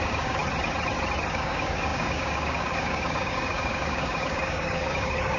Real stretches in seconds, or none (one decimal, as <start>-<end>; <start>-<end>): 0.4-1.3